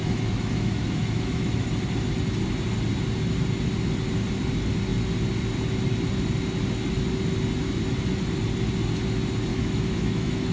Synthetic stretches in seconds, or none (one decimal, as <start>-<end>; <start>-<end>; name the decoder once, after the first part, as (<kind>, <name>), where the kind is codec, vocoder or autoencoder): 0.0-1.7 (autoencoder, DAC-VAE); 9.5-10.5